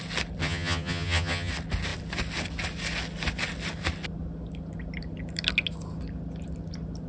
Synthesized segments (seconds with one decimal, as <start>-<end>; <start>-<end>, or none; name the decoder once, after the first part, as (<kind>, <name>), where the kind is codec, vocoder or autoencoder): 0.4-1.5 (vocoder, HiFi-GAN)